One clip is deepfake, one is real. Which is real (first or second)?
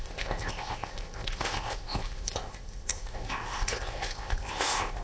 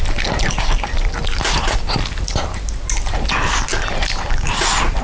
second